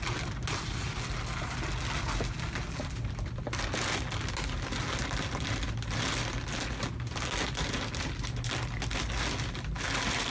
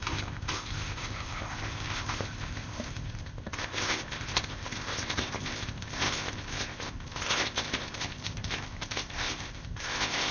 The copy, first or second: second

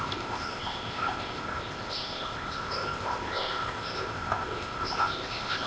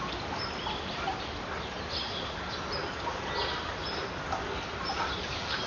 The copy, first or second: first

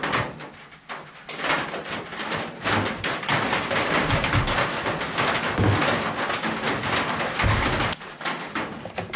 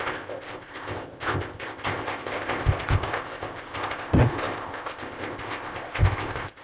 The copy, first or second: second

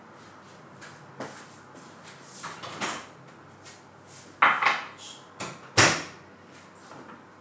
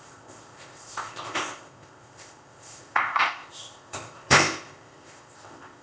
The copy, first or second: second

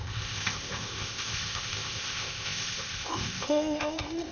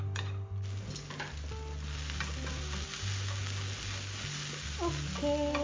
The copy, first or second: first